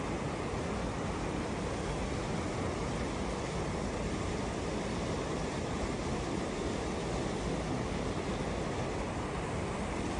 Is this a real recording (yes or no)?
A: yes